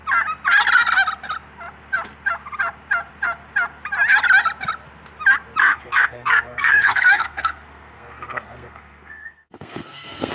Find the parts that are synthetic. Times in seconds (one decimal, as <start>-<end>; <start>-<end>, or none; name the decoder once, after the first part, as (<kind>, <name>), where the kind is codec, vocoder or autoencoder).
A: 5.6-10.3 (codec, SNAC)